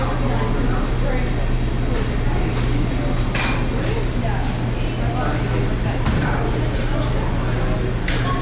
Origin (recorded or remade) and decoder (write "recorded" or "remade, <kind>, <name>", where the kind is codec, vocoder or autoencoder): recorded